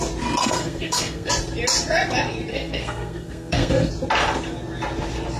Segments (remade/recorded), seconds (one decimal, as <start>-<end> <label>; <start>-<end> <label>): 0.0-0.4 recorded; 0.4-1.3 remade; 1.3-2.5 recorded; 2.5-3.9 remade; 3.9-5.4 recorded